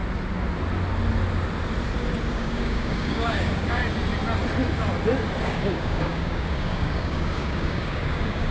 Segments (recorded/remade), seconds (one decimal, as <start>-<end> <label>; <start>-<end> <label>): 0.0-2.3 recorded; 2.3-3.8 remade; 3.8-5.4 recorded; 5.4-8.5 remade